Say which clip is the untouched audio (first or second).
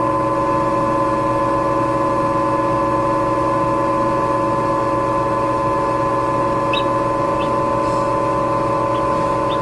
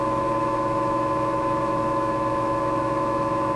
first